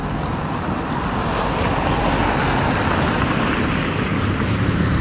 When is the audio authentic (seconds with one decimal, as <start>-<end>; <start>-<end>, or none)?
0.0-3.0